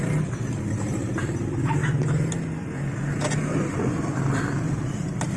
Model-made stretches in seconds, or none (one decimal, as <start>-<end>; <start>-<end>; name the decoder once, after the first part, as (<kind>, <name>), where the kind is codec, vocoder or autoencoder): none